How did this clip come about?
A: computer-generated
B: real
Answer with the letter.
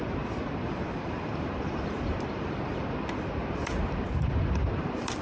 A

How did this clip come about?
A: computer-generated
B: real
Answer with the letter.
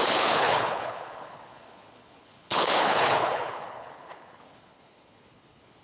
A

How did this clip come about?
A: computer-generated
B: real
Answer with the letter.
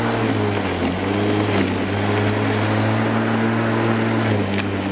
B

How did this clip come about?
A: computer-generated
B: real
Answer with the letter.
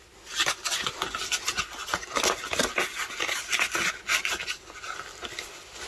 B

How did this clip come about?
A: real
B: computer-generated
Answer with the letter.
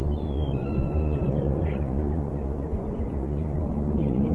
B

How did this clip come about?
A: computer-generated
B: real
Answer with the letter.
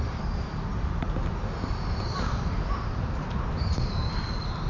B